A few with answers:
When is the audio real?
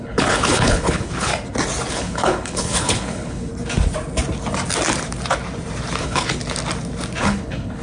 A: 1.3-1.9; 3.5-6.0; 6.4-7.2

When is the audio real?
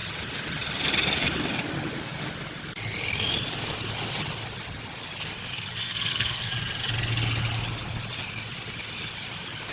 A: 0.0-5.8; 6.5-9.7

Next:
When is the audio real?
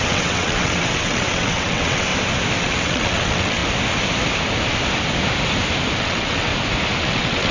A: 2.1-2.6; 3.6-6.0; 6.5-7.0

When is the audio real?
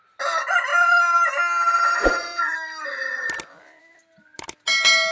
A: 0.0-5.1